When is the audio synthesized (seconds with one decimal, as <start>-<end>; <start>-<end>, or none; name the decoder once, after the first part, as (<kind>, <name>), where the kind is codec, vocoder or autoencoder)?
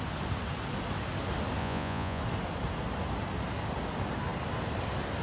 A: 1.6-2.2 (vocoder, Vocos)